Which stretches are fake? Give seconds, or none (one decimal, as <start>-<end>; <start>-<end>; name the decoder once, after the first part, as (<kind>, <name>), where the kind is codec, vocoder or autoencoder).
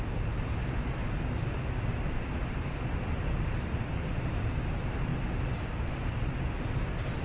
2.9-4.4 (vocoder, BigVGAN v2)